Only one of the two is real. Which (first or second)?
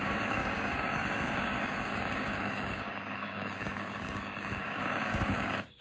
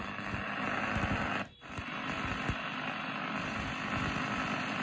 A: second